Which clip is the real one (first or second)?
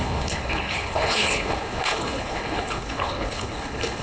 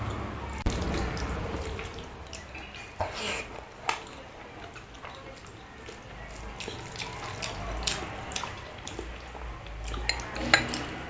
second